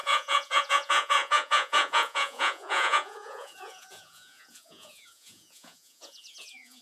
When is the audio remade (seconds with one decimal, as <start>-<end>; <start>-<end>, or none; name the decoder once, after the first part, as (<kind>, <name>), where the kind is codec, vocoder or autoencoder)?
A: 0.0-6.8 (vocoder, Vocos)

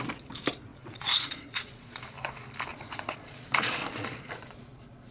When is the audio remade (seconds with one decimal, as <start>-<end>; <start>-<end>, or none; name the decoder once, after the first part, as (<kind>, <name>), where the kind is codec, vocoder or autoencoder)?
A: 0.7-2.0 (vocoder, Vocos); 2.7-5.1

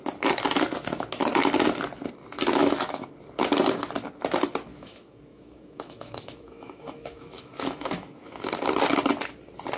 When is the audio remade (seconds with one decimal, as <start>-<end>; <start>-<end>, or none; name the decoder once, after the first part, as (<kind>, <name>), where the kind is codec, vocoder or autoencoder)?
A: 2.6-3.1 (autoencoder, DAC-VAE); 4.7-8.4

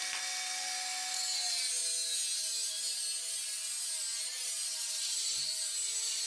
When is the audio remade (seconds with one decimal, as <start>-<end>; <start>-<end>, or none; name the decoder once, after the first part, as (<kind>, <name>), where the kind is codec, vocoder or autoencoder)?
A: none

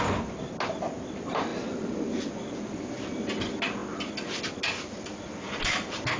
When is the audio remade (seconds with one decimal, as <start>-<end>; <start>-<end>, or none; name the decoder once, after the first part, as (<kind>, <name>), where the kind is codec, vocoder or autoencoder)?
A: none

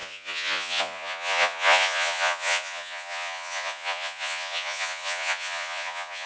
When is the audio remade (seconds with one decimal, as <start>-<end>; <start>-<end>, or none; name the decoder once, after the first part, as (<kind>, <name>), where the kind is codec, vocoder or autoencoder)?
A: 0.0-6.3 (vocoder, Vocos)

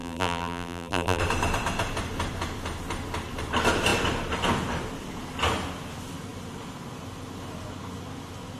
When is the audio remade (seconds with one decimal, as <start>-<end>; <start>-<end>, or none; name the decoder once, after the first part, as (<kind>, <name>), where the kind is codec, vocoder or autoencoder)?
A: 0.0-1.2 (vocoder, BigVGAN v2)